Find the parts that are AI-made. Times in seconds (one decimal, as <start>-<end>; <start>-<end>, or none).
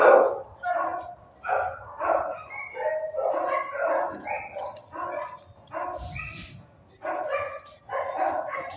none